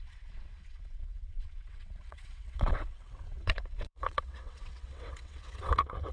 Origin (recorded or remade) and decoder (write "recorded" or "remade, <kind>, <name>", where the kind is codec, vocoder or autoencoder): remade, vocoder, WaveNeXt